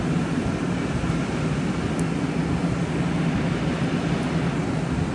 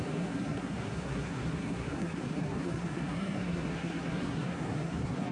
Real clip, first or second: first